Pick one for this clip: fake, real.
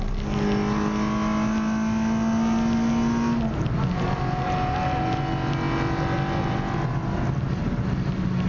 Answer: real